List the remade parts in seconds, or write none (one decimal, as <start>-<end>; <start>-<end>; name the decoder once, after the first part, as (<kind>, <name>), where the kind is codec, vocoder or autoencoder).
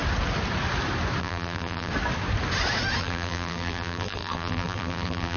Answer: 1.2-1.9 (vocoder, BigVGAN v2); 3.0-5.4